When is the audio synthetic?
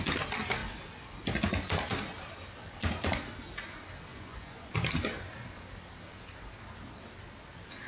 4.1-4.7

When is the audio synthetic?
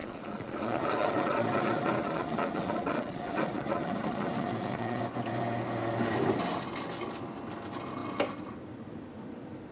0.0-5.0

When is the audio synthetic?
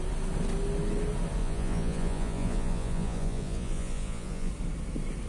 1.4-4.5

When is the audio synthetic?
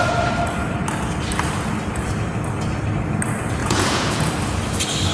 3.6-4.3